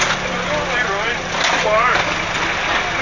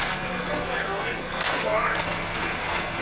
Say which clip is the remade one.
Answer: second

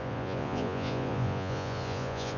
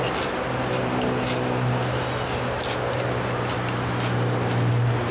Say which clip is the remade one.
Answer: first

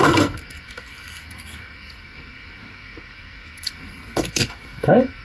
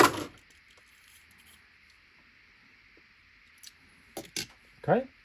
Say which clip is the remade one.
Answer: first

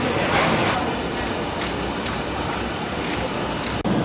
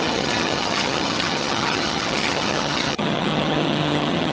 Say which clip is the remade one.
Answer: second